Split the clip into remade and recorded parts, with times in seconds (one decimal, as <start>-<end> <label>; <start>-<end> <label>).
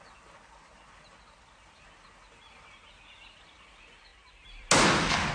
0.0-5.3 recorded